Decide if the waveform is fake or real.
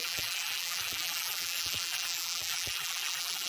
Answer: fake